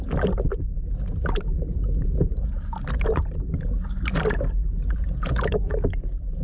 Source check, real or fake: real